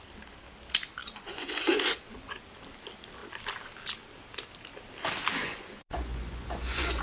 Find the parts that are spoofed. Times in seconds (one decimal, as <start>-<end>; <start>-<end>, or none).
1.0-2.3; 5.4-7.0